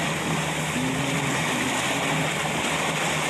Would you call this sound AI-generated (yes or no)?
no